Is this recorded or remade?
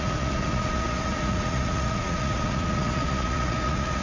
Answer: remade